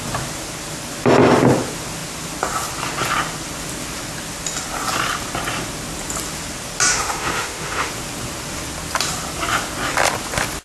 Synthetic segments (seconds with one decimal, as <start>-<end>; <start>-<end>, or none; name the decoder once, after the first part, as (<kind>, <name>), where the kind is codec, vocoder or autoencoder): 6.9-7.9 (autoencoder, DAC-VAE)